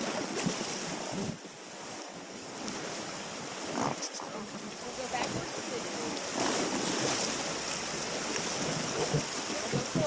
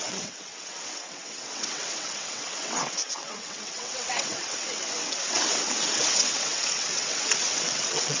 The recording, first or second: first